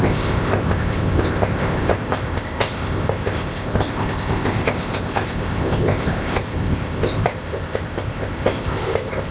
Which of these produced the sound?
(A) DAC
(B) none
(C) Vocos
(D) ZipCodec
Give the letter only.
D